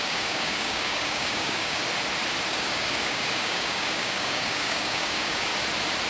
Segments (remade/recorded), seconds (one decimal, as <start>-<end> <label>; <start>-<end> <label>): 0.0-1.8 remade; 1.8-2.5 recorded; 2.5-5.5 remade; 5.5-6.1 recorded